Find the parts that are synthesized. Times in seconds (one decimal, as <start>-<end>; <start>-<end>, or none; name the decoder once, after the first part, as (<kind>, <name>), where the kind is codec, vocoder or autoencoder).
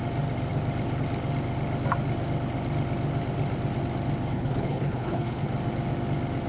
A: 4.3-5.5 (codec, HILCodec)